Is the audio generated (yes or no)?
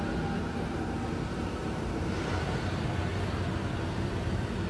no